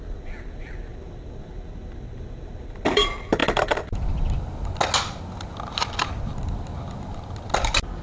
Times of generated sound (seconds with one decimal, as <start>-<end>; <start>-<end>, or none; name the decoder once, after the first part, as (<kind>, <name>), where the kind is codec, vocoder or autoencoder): none

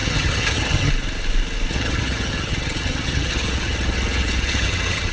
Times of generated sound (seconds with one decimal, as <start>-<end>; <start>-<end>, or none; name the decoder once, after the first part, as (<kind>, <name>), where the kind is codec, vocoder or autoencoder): 0.0-0.9 (vocoder, HiFi-GAN); 1.7-5.1

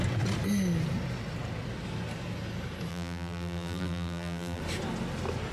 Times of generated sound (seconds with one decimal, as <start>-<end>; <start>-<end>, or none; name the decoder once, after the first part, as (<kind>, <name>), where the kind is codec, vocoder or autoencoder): 2.9-4.6 (vocoder, BigVGAN v2)